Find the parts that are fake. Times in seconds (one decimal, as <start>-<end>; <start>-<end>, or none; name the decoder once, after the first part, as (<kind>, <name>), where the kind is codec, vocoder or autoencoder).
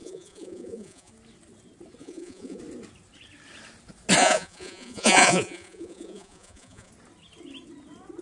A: 0.0-1.1 (vocoder, Vocos); 2.0-2.6; 4.2-6.9